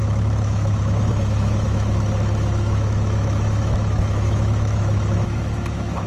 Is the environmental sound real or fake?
fake